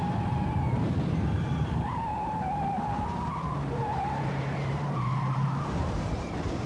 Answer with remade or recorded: remade